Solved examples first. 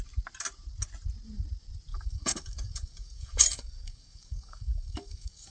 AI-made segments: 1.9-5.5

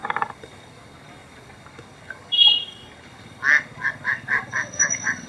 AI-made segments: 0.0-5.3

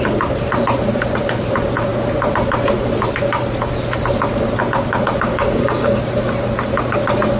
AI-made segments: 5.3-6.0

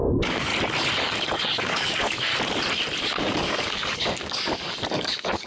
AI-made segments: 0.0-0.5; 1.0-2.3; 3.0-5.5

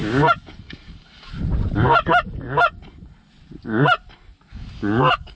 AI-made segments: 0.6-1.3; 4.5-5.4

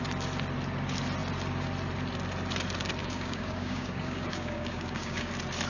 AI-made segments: 3.0-5.3

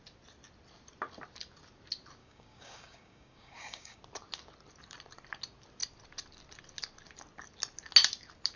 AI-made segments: 2.2-4.0

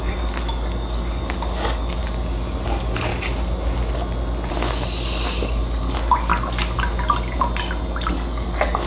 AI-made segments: 0.0-2.0; 2.6-3.1; 4.5-6.3; 8.1-8.9